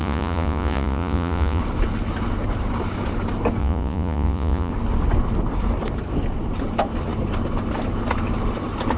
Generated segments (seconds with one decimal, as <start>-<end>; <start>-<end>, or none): 0.0-1.6; 3.6-4.7